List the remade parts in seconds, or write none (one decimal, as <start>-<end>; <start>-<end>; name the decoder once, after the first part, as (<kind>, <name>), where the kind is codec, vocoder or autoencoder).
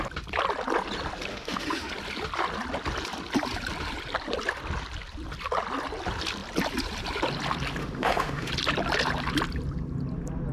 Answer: 1.3-1.9 (autoencoder, DAC-VAE); 7.8-8.5